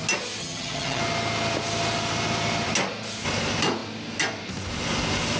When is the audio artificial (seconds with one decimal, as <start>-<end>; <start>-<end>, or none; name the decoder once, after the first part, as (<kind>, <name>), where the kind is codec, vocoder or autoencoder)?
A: 0.4-1.0 (vocoder, HiFi-GAN)